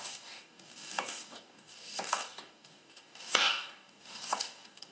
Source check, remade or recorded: remade